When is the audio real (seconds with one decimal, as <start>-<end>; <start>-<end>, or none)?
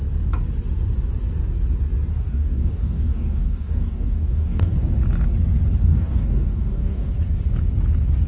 0.0-2.1; 4.7-5.8; 7.1-8.3